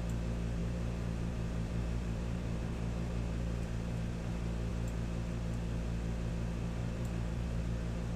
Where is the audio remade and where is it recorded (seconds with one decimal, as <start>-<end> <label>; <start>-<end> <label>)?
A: 0.0-0.6 recorded; 0.6-4.3 remade; 4.3-6.8 recorded; 6.8-7.6 remade; 7.6-8.2 recorded